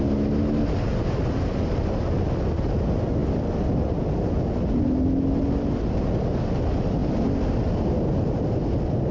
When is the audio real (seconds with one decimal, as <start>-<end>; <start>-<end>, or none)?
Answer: 0.0-9.1